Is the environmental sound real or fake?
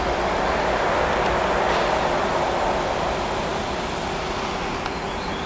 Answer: real